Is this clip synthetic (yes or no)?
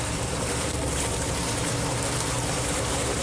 yes